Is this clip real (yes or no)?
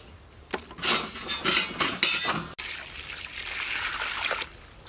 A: yes